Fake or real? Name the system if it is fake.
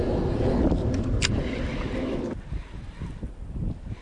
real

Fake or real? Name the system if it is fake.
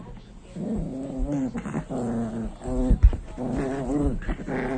real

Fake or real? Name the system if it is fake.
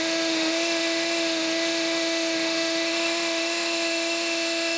fake, autoencoder, DAC-VAE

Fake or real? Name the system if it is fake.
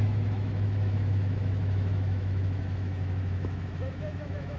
fake, autoencoder, DAC-VAE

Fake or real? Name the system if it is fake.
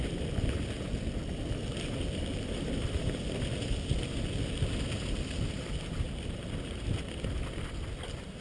real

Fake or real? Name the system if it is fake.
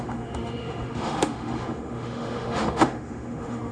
fake, autoencoder, DAC-VAE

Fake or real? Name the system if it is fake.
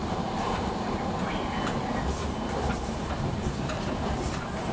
fake, vocoder, BigVGAN v2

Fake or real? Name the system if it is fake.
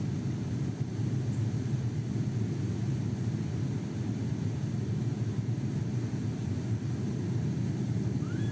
real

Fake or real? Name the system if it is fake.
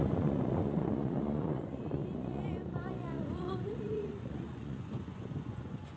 fake, vocoder, Vocos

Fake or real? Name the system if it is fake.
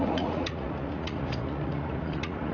fake, vocoder, Vocos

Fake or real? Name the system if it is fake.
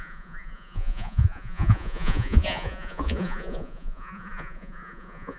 fake, vocoder, Vocos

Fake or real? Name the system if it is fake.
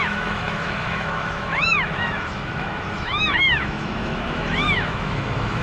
fake, autoencoder, DAC-VAE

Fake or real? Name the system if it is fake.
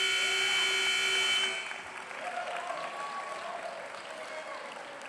real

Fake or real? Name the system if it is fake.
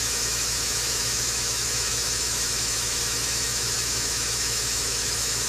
fake, autoencoder, DAC-VAE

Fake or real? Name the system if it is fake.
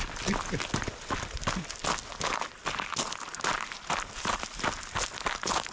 real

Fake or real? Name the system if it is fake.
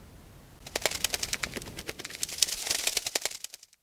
real